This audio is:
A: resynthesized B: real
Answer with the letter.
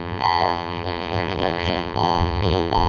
A